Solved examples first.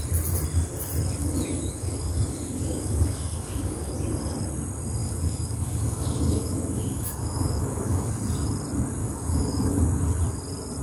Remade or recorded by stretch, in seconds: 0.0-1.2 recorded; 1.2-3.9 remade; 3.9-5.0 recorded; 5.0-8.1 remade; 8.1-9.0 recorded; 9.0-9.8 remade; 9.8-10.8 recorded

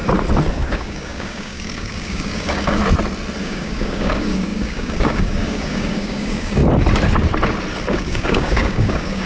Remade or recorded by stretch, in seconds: 0.0-0.5 recorded; 0.5-2.8 remade; 2.8-3.4 recorded; 3.4-6.6 remade; 6.6-7.9 recorded; 7.9-9.3 remade

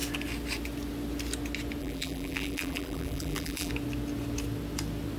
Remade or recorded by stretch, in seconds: 0.0-1.8 recorded; 1.8-3.7 remade; 3.7-5.2 recorded

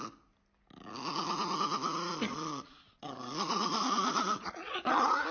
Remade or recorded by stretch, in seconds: 0.0-2.1 recorded; 2.1-5.3 remade

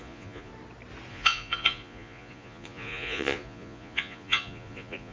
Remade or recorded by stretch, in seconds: 0.0-0.5 remade; 0.5-1.1 recorded; 1.1-5.1 remade